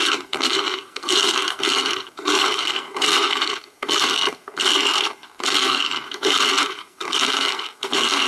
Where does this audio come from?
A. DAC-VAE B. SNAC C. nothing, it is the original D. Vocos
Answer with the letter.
B